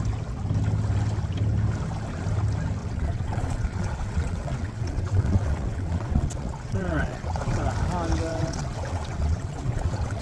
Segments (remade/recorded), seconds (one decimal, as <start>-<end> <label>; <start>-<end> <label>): 0.0-2.8 recorded; 2.8-7.6 remade; 7.6-8.3 recorded; 8.3-10.2 remade

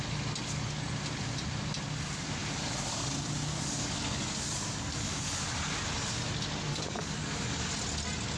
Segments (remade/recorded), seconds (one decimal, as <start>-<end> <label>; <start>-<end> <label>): 0.0-3.5 recorded; 3.5-5.4 remade; 5.4-6.7 recorded; 6.7-7.7 remade; 7.7-8.4 recorded

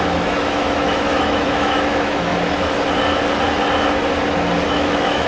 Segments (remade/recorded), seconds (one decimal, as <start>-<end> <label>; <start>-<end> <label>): 0.0-2.3 remade; 2.3-4.7 recorded; 4.7-5.3 remade

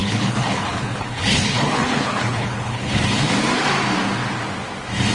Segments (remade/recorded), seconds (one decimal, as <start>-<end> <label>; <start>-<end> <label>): 0.0-3.1 remade; 3.1-5.1 recorded